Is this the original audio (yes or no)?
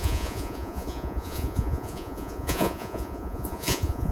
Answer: no